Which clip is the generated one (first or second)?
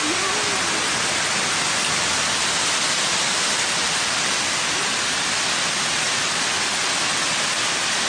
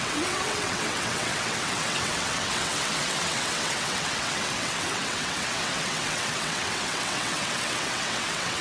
second